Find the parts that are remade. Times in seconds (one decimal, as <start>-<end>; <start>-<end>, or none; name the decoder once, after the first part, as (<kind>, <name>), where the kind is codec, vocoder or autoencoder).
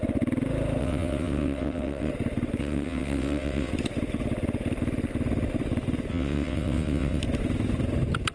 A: 0.8-2.1 (vocoder, WaveNeXt); 2.6-3.7; 6.1-7.2